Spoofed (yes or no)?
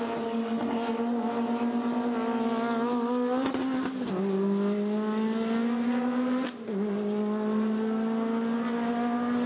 no